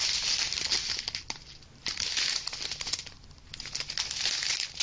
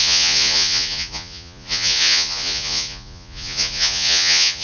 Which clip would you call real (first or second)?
first